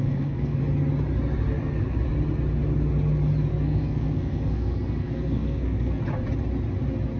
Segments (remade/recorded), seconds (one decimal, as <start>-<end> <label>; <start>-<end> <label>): 0.0-0.6 remade; 0.6-3.5 recorded; 3.5-6.0 remade; 6.0-7.2 recorded